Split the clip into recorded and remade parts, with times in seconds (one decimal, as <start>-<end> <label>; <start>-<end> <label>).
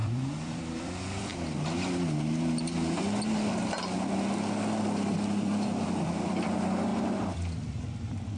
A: 0.0-1.3 remade; 1.3-4.8 recorded; 4.8-8.4 remade